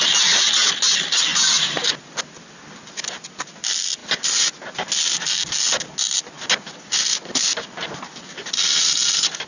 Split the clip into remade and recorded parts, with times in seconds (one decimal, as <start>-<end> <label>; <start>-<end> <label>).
0.0-9.5 recorded